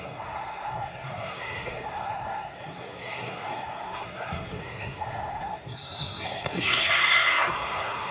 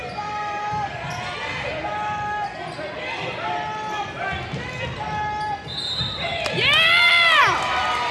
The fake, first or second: first